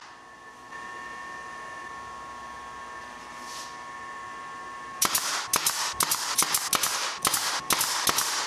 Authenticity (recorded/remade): recorded